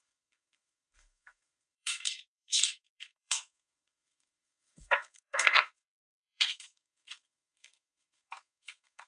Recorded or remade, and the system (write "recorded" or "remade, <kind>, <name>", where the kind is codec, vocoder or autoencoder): remade, codec, SNAC